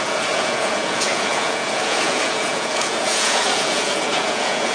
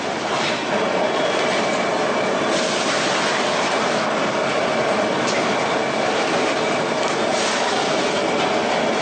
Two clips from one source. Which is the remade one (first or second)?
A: first